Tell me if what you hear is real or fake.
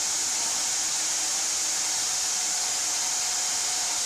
real